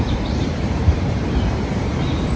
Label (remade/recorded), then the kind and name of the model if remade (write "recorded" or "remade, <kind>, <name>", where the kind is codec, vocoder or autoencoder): remade, vocoder, BigVGAN v2